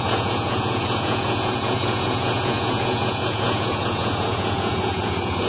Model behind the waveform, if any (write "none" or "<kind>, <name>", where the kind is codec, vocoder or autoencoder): vocoder, Vocos